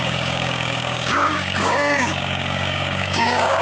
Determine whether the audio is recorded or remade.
remade